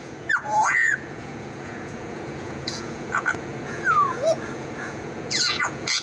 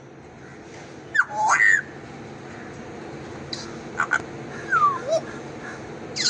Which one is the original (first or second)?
second